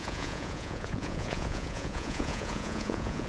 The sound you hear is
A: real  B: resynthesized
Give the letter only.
B